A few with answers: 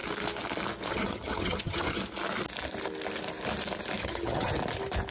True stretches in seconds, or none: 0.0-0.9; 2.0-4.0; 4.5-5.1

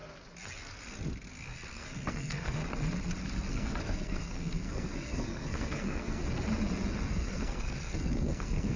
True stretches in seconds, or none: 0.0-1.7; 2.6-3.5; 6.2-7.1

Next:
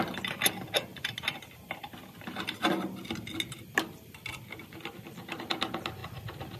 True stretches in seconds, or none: 0.0-6.6